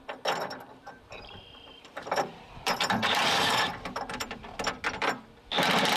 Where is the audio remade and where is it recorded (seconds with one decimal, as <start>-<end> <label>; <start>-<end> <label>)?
0.0-0.8 recorded; 0.8-4.4 remade; 4.4-6.0 recorded